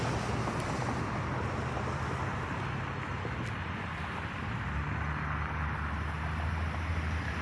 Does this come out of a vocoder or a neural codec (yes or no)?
no